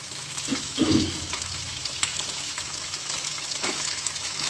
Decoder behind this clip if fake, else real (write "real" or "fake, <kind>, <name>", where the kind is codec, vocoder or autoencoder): fake, autoencoder, DAC-VAE